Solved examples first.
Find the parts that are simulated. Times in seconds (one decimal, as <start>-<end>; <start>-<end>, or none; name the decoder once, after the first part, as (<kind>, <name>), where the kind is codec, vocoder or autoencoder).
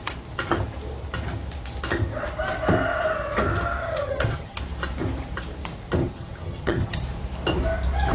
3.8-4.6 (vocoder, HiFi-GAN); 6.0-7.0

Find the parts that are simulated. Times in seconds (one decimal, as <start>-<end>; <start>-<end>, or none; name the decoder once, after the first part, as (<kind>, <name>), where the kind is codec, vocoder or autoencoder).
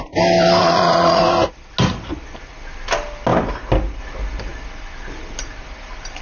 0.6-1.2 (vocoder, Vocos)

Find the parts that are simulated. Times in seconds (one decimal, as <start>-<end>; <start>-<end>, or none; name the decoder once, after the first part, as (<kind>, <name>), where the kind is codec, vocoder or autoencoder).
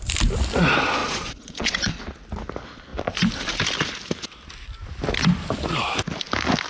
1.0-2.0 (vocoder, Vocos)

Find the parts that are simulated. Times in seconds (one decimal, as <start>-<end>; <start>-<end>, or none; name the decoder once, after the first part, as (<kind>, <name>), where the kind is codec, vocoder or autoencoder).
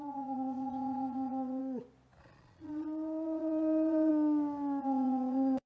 0.0-1.6 (vocoder, Vocos); 2.2-4.1; 4.8-5.7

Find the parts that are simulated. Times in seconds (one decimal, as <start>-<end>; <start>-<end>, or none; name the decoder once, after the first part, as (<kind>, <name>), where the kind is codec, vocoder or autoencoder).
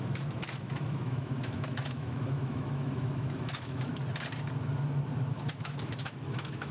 0.0-3.9 (autoencoder, DAC-VAE); 5.3-6.7